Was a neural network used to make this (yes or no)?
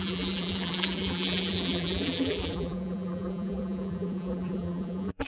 yes